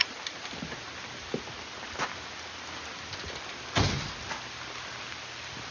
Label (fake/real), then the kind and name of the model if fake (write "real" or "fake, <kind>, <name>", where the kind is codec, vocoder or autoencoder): real